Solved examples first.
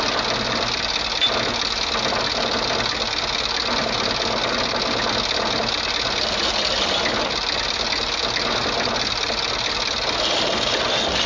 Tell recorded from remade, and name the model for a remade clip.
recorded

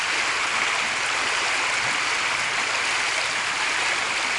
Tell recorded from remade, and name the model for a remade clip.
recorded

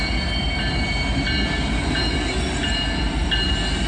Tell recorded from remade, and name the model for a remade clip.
recorded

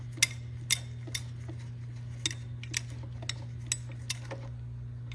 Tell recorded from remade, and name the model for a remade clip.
recorded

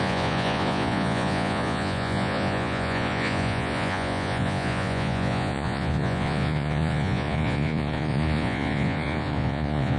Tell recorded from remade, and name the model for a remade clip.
remade, vocoder, Vocos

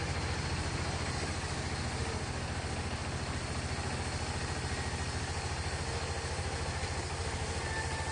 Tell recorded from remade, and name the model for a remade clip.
recorded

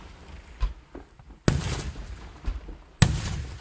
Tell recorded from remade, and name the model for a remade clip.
recorded